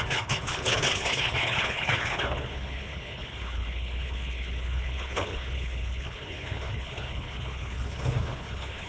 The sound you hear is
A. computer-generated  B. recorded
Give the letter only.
A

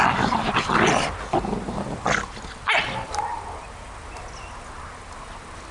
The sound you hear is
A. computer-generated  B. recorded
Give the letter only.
B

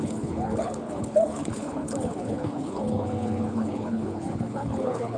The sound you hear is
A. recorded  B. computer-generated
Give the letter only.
B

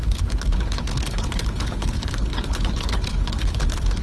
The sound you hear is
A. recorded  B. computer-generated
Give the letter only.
B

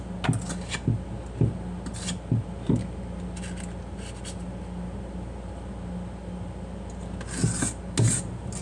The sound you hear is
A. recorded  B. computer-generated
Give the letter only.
A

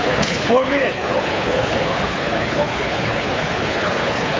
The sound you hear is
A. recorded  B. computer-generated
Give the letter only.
B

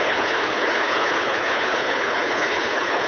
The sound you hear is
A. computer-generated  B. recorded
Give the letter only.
A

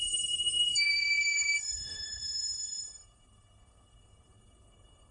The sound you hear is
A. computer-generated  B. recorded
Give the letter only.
A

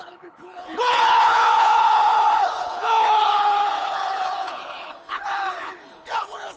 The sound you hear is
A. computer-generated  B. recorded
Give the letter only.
A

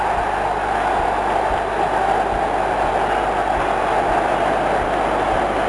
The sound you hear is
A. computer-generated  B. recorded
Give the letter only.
B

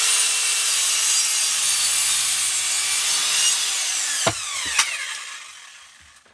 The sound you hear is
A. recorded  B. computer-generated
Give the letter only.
A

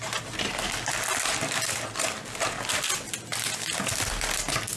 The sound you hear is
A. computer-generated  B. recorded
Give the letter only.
B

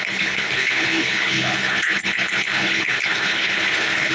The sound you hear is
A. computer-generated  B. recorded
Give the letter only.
A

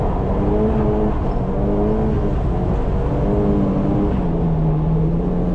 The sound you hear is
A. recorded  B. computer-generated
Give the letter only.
A